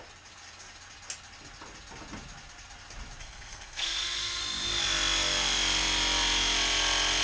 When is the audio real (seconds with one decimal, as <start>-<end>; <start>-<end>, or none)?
0.0-3.2; 4.4-7.2